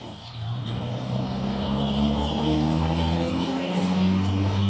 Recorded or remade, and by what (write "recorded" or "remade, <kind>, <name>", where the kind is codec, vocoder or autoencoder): remade, codec, DAC